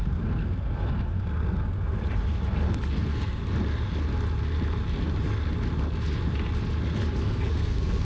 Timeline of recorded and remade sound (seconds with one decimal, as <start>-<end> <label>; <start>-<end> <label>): 0.0-2.0 remade; 2.0-2.9 recorded; 2.9-3.4 remade; 3.4-7.2 recorded; 7.2-8.0 remade